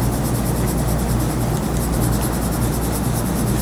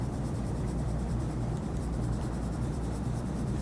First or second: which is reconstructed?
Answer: second